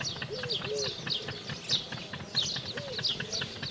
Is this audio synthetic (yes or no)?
no